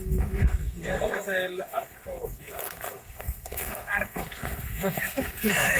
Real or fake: fake